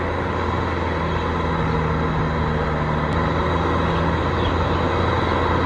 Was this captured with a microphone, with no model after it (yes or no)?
yes